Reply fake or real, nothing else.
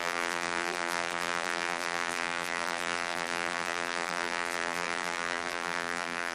fake